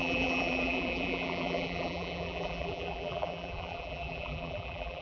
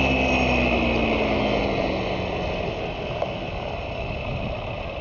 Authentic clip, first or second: second